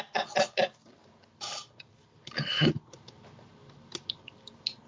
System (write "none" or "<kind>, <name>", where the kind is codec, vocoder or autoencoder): none